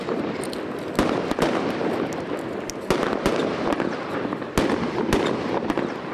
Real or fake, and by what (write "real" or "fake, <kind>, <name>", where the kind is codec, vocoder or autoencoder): real